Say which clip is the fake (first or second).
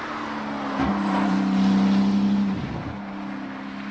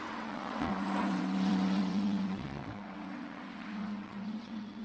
second